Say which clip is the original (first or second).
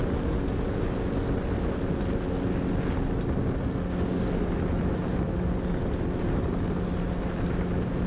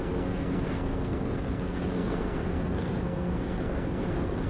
first